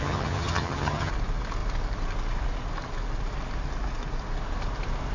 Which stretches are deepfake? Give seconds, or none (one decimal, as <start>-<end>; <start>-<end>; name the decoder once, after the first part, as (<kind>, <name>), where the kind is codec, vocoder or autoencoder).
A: 0.0-1.1 (vocoder, HiFi-GAN)